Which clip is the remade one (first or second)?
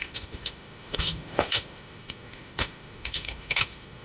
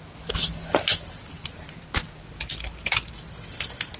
first